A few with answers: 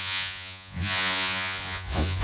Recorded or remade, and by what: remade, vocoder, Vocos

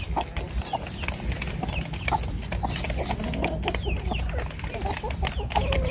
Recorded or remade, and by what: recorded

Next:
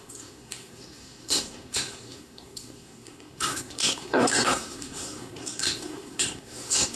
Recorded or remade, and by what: remade, codec, SNAC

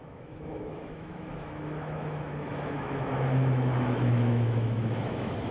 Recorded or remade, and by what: remade, autoencoder, DAC-VAE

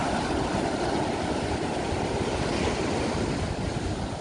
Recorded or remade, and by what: recorded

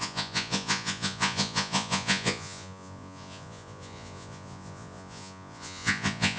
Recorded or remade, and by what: remade, vocoder, Vocos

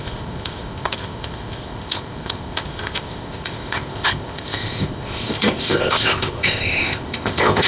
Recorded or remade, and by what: remade, codec, ZipCodec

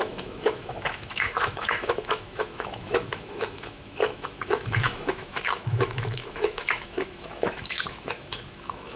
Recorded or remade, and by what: remade, autoencoder, DAC-VAE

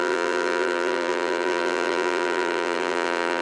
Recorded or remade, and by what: remade, vocoder, BigVGAN v2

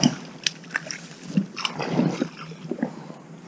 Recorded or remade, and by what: recorded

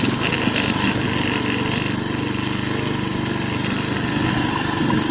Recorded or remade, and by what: recorded